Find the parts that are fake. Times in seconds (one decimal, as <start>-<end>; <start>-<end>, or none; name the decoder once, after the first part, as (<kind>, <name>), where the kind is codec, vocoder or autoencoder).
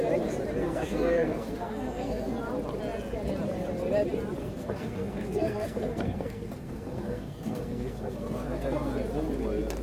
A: 0.6-2.4 (codec, SNAC); 4.4-8.9